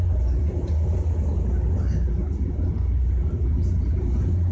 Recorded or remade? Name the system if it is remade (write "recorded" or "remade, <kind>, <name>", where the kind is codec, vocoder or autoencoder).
recorded